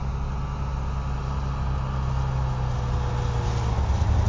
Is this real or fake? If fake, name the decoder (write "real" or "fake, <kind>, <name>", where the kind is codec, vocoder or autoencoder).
real